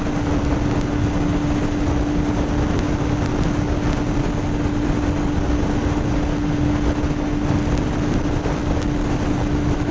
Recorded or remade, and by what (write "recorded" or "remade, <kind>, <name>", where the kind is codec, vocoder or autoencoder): recorded